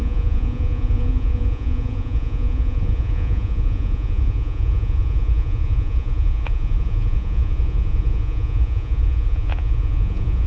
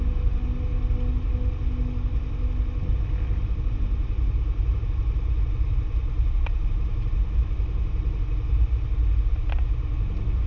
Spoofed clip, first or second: first